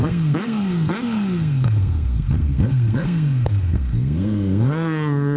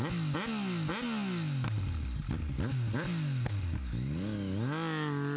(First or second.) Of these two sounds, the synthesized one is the first